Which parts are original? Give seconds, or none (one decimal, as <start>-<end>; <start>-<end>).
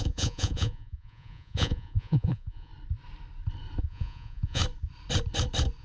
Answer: 2.7-3.8; 4.6-5.8